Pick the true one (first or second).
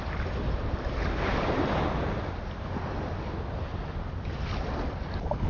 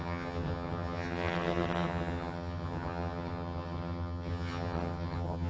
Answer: first